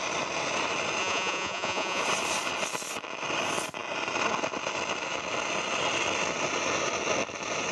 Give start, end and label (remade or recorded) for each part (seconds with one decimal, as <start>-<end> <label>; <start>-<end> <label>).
0.0-1.0 recorded; 1.0-2.0 remade; 2.0-7.7 recorded